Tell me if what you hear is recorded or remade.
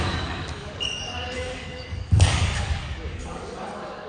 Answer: remade